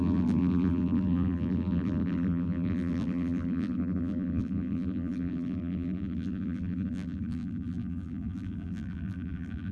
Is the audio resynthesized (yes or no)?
yes